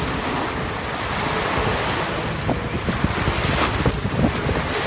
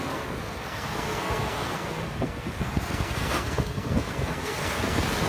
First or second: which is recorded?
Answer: first